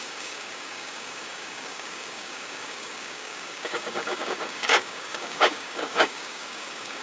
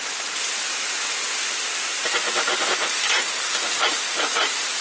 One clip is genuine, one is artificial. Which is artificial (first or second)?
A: first